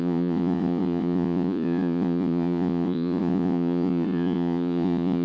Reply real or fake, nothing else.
fake